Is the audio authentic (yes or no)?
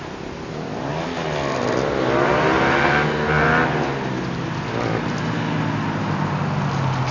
yes